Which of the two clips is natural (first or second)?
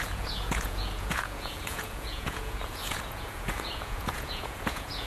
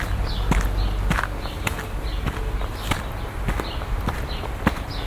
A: second